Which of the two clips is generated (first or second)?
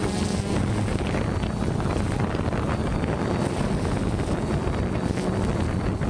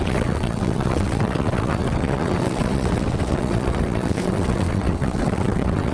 second